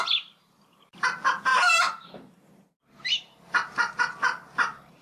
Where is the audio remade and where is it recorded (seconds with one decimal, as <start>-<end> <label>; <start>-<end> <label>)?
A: 0.0-5.0 recorded